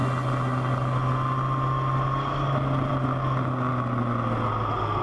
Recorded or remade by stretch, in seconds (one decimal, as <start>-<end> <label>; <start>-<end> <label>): 0.0-5.0 recorded